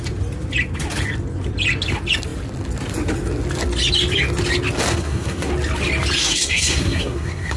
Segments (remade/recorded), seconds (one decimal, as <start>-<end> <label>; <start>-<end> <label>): 0.0-4.9 recorded; 4.9-5.5 remade; 5.5-6.2 recorded; 6.2-7.6 remade